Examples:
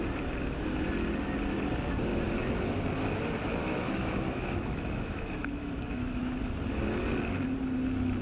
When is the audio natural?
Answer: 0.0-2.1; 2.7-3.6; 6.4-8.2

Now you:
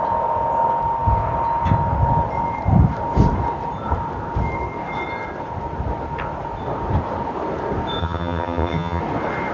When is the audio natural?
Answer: 0.0-8.0; 9.0-9.5

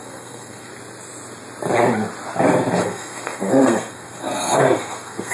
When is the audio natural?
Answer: 0.7-2.8

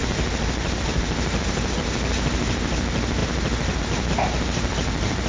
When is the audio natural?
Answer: 0.0-5.3